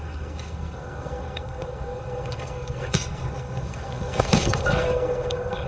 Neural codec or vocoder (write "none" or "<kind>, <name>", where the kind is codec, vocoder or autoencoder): codec, SNAC